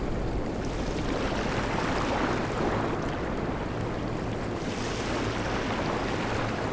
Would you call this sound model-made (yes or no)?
no